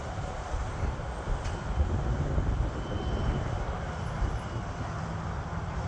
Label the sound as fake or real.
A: real